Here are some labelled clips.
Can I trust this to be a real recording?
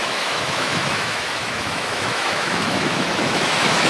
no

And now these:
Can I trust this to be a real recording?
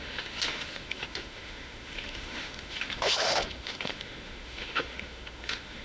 no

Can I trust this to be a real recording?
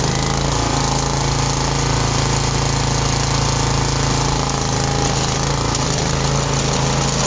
yes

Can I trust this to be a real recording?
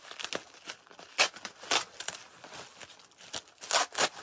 yes